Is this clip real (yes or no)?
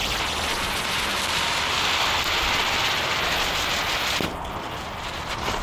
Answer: yes